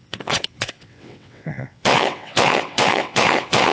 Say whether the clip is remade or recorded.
remade